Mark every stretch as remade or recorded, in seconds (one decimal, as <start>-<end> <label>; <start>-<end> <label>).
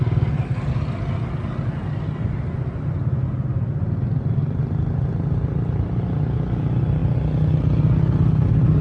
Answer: 0.0-8.8 recorded